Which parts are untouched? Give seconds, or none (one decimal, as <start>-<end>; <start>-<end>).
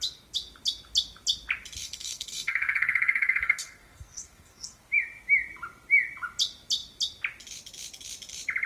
0.0-1.8; 4.8-8.7